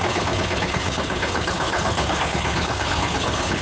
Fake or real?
fake